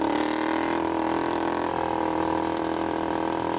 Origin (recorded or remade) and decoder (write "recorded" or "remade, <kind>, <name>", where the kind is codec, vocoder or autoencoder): remade, vocoder, BigVGAN v2